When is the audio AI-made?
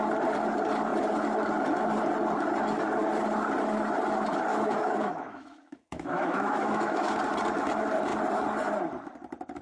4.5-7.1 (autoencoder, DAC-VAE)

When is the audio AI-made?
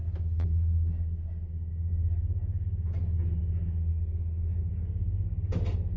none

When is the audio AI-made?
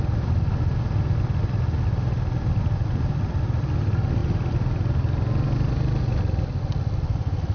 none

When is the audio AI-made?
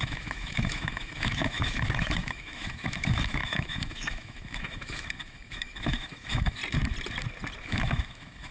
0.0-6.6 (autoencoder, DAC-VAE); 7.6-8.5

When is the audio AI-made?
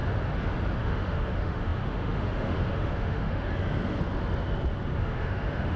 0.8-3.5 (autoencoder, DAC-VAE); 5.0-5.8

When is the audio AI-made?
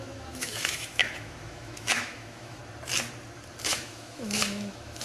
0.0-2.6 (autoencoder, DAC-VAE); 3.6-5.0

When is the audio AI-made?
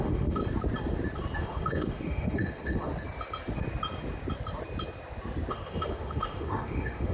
0.0-0.4 (autoencoder, DAC-VAE); 1.4-2.9; 5.5-7.1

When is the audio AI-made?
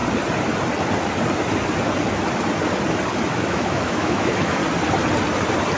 3.5-4.6 (autoencoder, DAC-VAE)